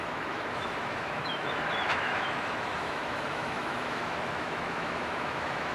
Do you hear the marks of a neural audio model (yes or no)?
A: yes